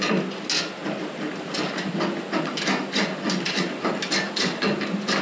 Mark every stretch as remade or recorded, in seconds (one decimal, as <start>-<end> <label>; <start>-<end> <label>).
0.0-5.2 recorded